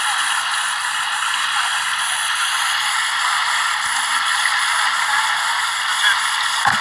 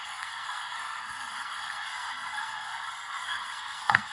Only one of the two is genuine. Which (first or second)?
first